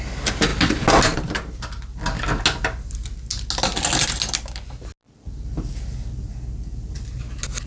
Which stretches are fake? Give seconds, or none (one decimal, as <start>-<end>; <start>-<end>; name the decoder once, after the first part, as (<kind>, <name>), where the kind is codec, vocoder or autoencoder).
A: none